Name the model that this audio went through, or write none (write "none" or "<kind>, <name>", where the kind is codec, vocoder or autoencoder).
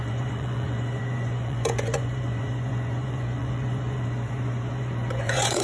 vocoder, Vocos